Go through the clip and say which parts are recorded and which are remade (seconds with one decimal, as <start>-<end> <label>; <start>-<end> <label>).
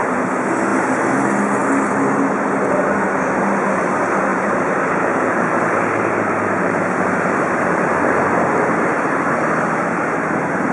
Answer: 0.0-4.3 recorded; 4.3-8.2 remade; 8.2-10.7 recorded